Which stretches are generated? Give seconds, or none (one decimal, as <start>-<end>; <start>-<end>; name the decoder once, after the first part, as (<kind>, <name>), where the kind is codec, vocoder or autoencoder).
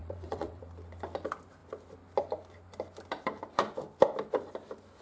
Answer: 0.0-0.6 (vocoder, WaveNeXt)